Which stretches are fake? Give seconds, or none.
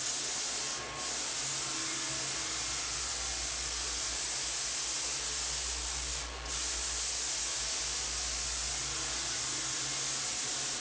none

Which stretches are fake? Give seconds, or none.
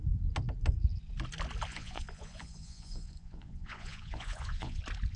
1.7-4.8 (vocoder, Vocos)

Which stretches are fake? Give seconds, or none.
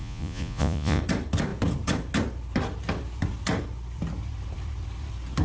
0.0-1.0 (vocoder, Vocos)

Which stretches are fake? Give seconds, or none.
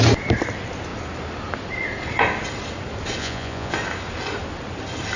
3.2-3.7 (vocoder, Vocos)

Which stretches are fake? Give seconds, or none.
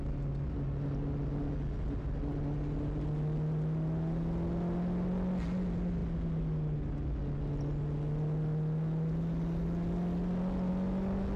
none